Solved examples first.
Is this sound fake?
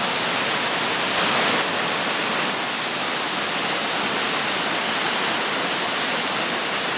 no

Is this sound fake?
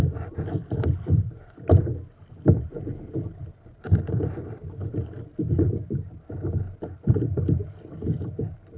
no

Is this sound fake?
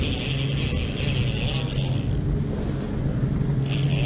no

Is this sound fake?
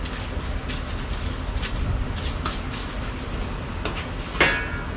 no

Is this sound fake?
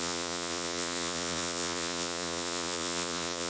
yes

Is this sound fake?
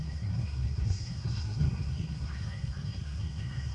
yes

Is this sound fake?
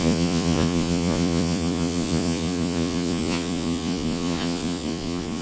yes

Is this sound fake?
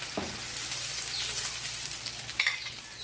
no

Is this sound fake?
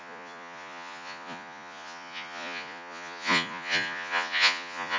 yes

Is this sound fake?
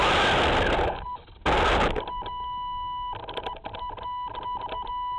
no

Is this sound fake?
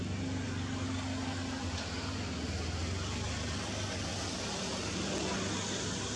no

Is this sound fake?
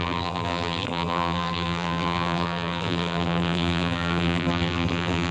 yes